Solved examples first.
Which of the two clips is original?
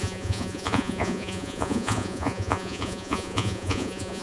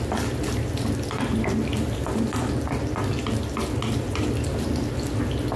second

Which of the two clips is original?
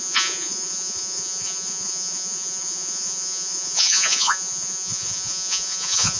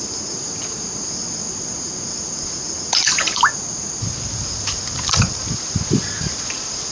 second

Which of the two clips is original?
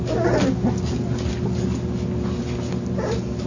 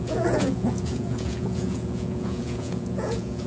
first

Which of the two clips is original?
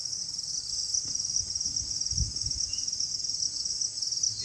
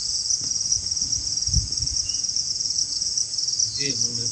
first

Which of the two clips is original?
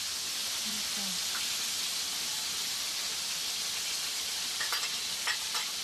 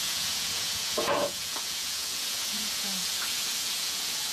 first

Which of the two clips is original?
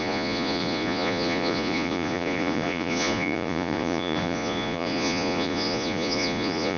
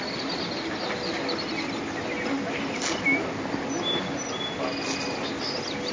second